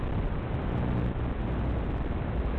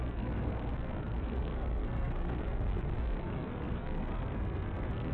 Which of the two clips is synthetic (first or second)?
second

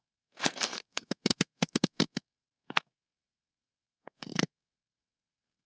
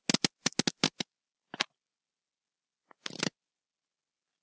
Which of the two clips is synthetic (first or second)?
first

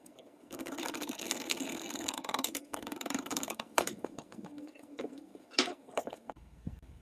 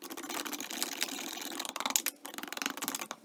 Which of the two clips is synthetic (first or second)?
first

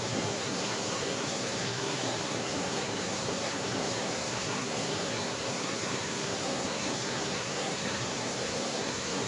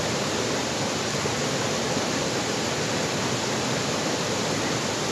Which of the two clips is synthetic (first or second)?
first